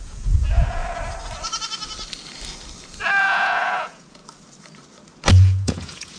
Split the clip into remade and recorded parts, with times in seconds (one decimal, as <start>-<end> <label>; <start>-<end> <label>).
0.0-0.8 remade; 0.8-3.2 recorded; 3.2-4.2 remade; 4.2-5.3 recorded; 5.3-6.2 remade